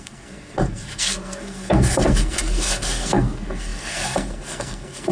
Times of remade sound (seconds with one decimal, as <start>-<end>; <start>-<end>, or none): 0.0-5.1